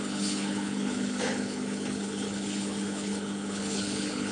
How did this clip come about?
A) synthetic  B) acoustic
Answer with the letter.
A